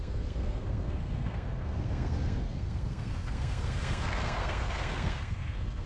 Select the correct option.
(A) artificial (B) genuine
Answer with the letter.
A